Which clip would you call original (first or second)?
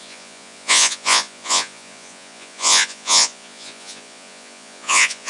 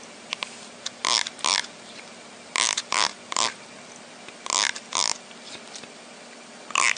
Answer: second